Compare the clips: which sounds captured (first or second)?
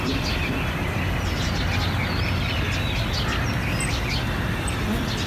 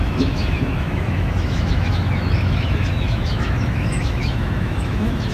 first